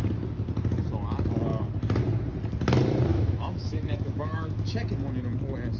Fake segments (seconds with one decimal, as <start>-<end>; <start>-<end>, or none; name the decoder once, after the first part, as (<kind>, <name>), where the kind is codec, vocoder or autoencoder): 3.1-4.7 (autoencoder, DAC-VAE)